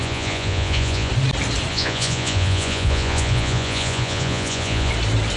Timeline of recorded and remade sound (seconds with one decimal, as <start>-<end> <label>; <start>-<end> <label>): 0.0-1.1 remade; 1.1-1.7 recorded; 1.7-4.9 remade; 4.9-5.4 recorded